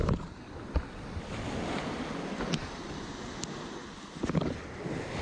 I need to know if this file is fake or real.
real